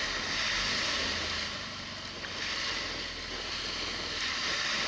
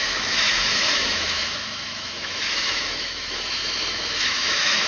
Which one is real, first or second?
first